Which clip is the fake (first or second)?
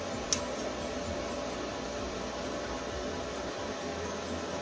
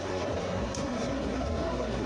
second